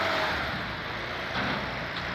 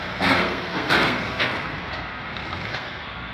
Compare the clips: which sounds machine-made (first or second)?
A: second